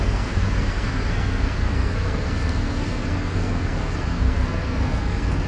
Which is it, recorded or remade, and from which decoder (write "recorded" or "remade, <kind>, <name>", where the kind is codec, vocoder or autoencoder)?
remade, codec, SNAC